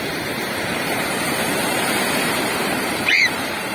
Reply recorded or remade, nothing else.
remade